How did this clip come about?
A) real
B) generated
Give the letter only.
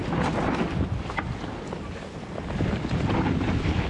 A